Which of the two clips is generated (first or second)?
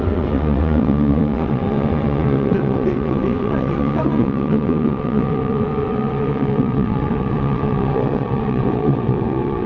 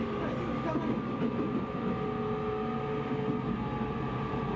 first